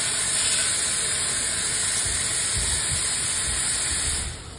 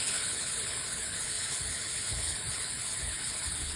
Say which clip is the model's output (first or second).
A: second